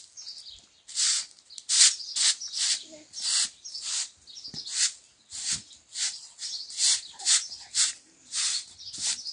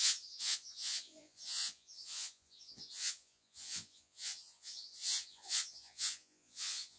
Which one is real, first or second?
first